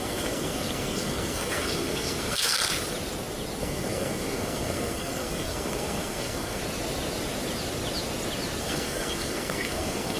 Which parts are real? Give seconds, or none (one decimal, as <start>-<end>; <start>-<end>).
2.6-3.6; 6.6-8.6